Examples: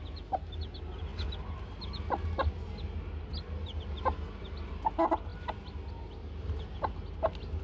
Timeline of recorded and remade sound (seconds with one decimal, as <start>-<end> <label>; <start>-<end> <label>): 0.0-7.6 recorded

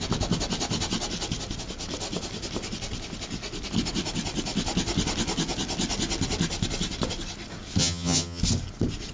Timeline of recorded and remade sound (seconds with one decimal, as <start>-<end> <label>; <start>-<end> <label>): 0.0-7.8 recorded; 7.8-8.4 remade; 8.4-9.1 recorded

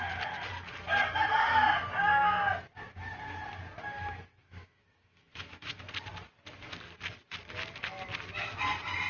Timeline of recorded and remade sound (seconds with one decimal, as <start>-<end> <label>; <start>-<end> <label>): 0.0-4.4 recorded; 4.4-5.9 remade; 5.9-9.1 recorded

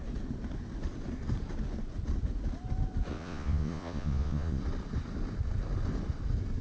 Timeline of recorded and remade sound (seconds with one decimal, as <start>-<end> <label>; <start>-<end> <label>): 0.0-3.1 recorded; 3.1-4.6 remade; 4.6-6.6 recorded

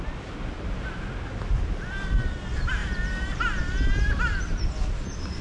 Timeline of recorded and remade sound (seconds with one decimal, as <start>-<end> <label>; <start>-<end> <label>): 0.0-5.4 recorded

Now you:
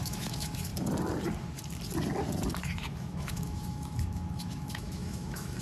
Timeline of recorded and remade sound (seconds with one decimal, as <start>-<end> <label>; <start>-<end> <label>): 0.0-0.7 remade; 0.7-2.6 recorded; 2.6-5.6 remade

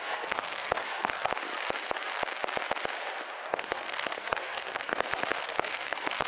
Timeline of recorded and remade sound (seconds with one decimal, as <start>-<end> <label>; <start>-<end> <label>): 0.0-1.3 remade; 1.3-3.5 recorded; 3.5-6.3 remade

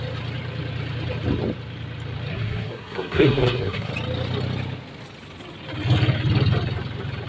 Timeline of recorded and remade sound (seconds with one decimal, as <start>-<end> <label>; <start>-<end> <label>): 0.0-2.3 recorded; 2.3-3.9 remade; 3.9-7.3 recorded